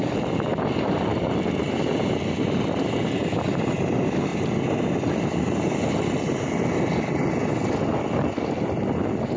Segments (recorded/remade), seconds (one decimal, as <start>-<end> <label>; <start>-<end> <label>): 0.0-9.4 recorded